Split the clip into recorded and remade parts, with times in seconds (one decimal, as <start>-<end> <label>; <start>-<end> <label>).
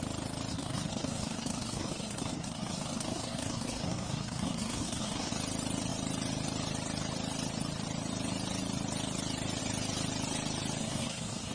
0.0-0.5 recorded; 0.5-5.3 remade; 5.3-10.8 recorded; 10.8-11.5 remade